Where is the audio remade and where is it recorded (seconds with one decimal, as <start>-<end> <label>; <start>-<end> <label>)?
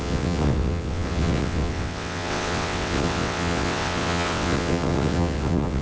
0.0-5.8 remade